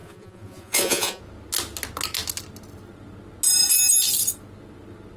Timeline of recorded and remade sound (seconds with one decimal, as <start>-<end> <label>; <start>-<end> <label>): 0.0-1.2 remade; 1.2-5.2 recorded